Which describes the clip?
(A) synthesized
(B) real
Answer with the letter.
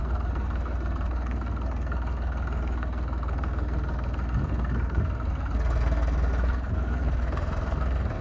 A